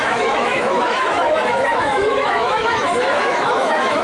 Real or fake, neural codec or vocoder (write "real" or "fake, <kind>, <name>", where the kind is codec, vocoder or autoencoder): fake, autoencoder, DAC-VAE